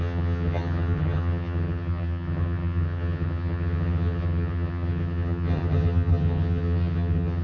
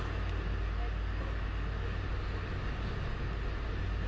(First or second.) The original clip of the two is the second